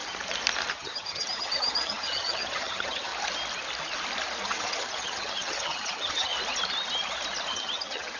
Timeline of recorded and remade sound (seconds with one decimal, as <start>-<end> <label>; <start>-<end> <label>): 0.0-0.7 recorded; 0.7-3.1 remade; 3.1-4.4 recorded; 4.4-6.3 remade; 6.3-7.5 recorded; 7.5-8.2 remade